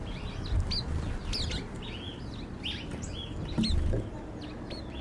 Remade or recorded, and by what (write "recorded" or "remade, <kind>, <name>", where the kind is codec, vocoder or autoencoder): recorded